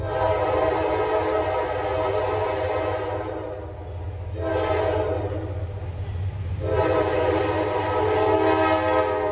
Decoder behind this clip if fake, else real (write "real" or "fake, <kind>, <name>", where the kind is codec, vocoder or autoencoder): real